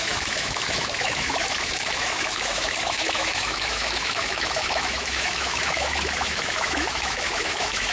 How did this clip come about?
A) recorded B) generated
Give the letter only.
B